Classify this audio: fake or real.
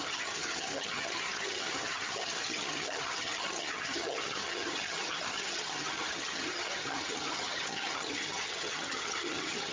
fake